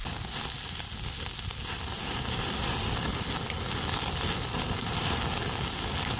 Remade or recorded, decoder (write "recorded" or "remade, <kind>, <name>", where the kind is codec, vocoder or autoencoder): recorded